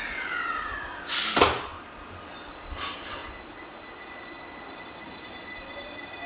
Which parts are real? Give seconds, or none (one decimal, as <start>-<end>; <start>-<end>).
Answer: 3.2-4.0